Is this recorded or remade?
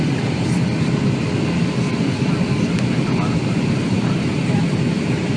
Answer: recorded